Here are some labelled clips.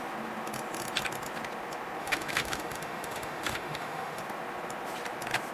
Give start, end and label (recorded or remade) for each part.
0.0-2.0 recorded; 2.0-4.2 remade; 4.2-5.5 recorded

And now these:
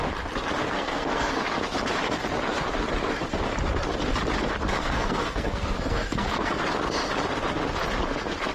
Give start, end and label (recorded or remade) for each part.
0.0-0.6 recorded; 0.6-1.4 remade; 1.4-4.8 recorded; 4.8-6.6 remade; 6.6-8.5 recorded

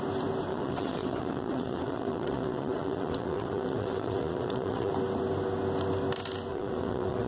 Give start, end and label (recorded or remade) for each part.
0.0-0.5 recorded; 0.5-4.9 remade; 4.9-6.5 recorded; 6.5-7.3 remade

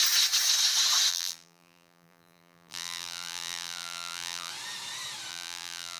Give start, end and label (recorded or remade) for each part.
0.0-1.1 recorded; 1.1-4.5 remade; 4.5-5.3 recorded; 5.3-6.0 remade

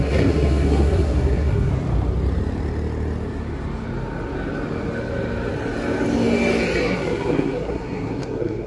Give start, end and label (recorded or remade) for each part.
0.0-1.7 remade; 1.7-6.8 recorded; 6.8-8.7 remade